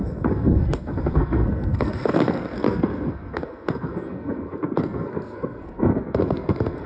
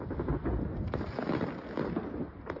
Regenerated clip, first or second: first